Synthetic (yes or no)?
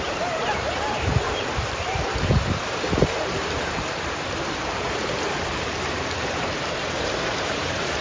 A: yes